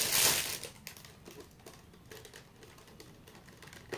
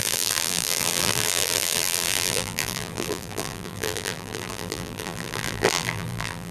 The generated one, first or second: second